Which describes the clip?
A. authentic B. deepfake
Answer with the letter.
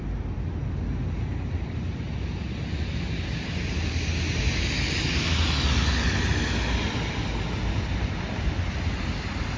A